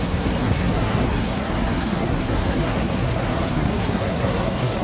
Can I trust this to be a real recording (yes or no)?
no